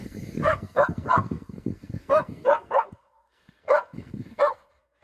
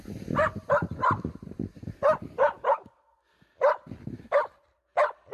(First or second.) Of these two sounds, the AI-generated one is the first